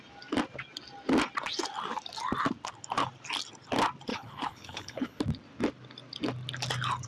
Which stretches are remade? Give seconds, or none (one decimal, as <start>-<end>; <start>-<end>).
4.1-5.2